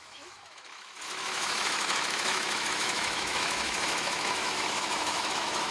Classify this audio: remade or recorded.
remade